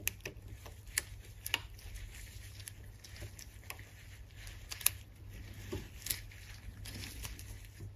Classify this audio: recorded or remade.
recorded